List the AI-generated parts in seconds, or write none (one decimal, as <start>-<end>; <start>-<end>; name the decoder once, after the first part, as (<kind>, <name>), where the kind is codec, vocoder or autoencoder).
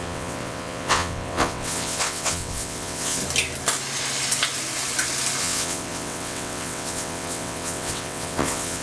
0.0-3.2 (vocoder, WaveNeXt); 5.4-8.8